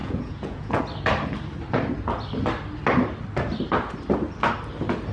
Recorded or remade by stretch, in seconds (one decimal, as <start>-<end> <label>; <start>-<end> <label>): 0.0-0.8 remade; 0.8-5.1 recorded